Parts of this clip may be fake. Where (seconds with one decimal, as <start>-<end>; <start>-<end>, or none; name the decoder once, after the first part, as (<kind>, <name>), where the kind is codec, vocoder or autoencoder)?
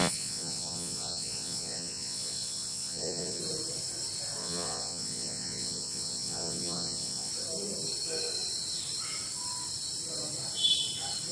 0.0-3.4 (vocoder, Vocos); 4.4-7.3